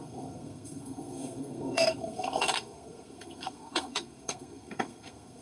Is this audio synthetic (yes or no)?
yes